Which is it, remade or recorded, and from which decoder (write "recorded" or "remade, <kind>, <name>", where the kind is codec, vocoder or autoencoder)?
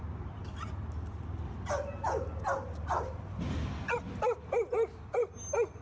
recorded